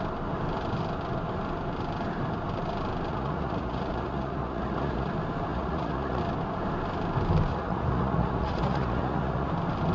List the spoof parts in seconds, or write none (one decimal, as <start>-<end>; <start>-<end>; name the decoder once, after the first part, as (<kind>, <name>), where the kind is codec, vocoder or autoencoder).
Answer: 3.1-5.1 (vocoder, Vocos); 5.5-6.2; 7.5-9.5